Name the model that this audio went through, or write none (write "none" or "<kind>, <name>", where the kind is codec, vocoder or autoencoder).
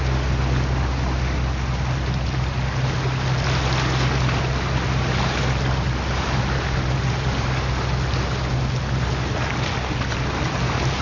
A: none